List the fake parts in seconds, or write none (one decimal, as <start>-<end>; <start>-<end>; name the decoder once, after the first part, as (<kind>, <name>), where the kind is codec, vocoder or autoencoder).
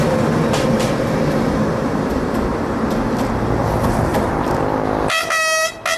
2.5-3.3 (vocoder, BigVGAN v2); 4.1-4.6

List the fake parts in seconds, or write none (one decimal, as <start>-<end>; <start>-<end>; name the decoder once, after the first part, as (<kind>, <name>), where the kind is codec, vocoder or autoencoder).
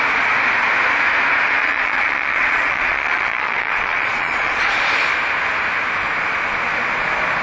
1.6-4.9 (vocoder, Vocos)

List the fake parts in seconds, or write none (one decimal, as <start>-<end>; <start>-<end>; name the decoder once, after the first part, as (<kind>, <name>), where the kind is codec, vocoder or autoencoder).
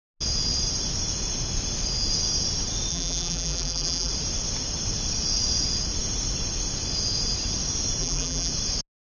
2.9-4.1 (vocoder, BigVGAN v2); 8.0-8.5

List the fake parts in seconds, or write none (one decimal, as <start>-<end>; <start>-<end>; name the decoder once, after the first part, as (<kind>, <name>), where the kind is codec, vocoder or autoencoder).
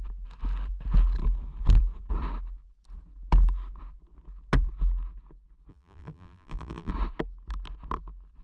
5.7-6.9 (vocoder, BigVGAN v2)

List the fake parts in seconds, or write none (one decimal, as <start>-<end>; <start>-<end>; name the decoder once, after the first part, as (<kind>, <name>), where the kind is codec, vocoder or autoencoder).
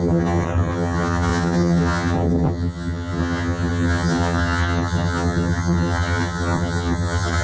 0.0-7.4 (vocoder, HiFi-GAN)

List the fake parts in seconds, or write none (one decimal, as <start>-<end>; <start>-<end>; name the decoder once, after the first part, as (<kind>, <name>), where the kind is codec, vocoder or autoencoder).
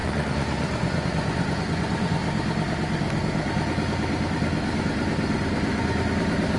0.0-2.2 (vocoder, Vocos)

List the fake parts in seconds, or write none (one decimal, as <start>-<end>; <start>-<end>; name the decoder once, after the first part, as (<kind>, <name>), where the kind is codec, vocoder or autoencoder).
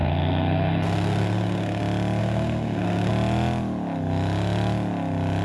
0.0-1.8 (codec, SNAC); 2.2-3.1